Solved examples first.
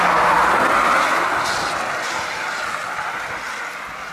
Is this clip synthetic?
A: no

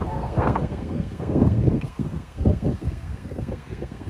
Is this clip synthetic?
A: yes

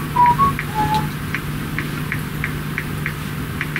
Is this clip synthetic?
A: no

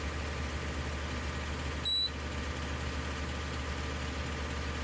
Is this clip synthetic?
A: no